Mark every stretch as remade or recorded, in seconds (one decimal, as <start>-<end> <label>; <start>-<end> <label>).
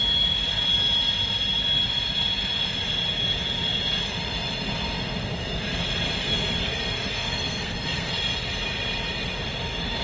0.0-6.2 recorded; 6.2-8.1 remade; 8.1-10.0 recorded